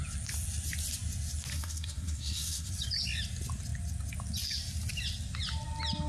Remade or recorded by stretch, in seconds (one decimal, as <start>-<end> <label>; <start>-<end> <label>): 0.0-1.5 recorded; 1.5-2.7 remade; 2.7-6.1 recorded